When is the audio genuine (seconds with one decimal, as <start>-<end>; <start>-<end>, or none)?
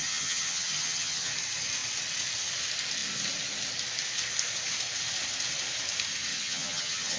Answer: 1.3-6.3